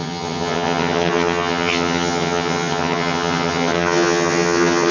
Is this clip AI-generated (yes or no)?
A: yes